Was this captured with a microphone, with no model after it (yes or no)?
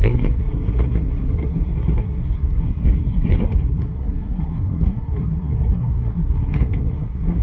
no